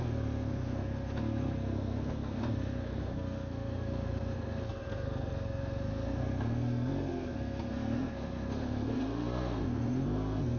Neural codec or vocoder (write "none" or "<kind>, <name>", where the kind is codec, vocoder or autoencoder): codec, SNAC